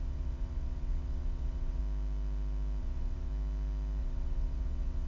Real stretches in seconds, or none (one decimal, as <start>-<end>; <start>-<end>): 1.8-2.8; 3.3-4.0